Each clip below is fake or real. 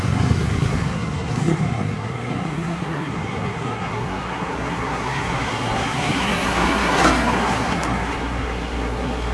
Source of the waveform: fake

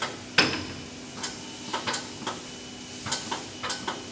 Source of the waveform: real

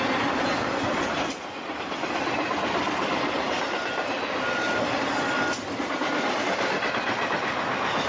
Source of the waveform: real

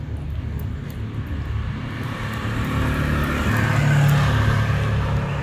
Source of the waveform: real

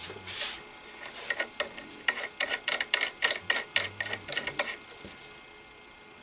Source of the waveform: real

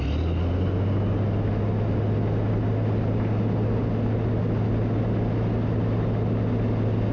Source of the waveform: real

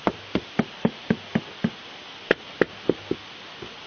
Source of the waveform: real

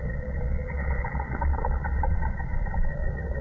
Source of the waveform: fake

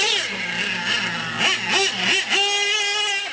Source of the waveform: real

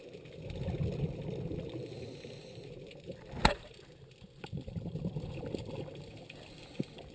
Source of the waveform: real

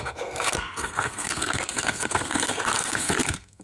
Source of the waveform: fake